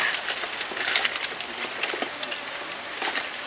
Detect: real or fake real